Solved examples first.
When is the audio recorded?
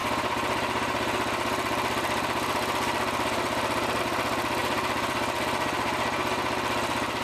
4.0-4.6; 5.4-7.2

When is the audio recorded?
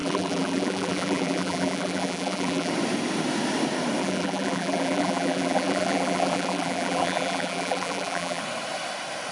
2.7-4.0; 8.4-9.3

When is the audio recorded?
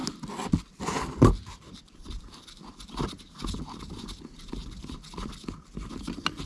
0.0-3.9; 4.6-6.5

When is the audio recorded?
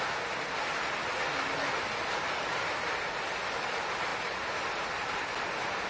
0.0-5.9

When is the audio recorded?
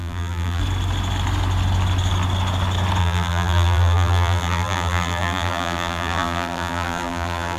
0.6-3.0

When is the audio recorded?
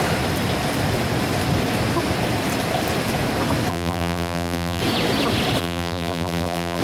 0.0-3.7; 4.8-5.6